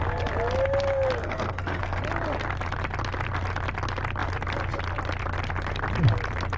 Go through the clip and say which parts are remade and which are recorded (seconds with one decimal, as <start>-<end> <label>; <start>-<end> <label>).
0.0-1.2 recorded; 1.2-2.0 remade; 2.0-6.6 recorded

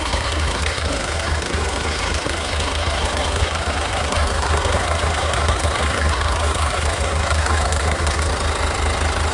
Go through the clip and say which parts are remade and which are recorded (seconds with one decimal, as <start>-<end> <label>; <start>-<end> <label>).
0.0-8.3 remade; 8.3-9.3 recorded

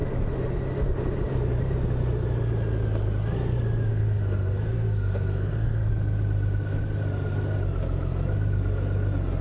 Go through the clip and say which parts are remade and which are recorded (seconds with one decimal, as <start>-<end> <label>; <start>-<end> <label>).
0.0-3.9 recorded; 3.9-5.9 remade; 5.9-9.4 recorded

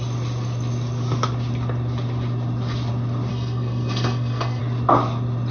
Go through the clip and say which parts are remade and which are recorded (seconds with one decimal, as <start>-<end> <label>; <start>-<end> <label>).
0.0-3.3 recorded; 3.3-4.6 remade; 4.6-5.5 recorded

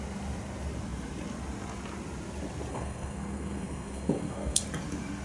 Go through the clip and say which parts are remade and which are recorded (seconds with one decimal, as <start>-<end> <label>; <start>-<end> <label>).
0.0-2.7 recorded; 2.7-4.6 remade; 4.6-5.2 recorded

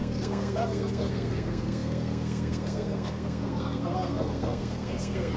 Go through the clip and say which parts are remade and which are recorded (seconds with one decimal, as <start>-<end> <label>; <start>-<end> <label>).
0.0-5.4 remade

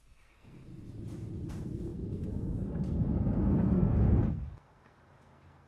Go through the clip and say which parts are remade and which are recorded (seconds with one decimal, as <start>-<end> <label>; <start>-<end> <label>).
0.0-0.7 remade; 0.7-1.5 recorded; 1.5-5.7 remade